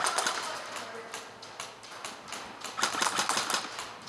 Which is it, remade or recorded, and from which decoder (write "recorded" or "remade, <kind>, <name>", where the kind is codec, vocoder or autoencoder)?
recorded